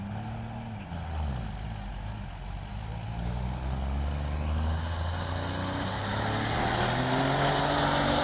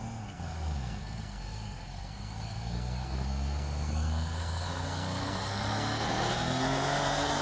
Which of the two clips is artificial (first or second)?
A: second